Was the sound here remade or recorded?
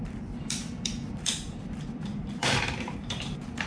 remade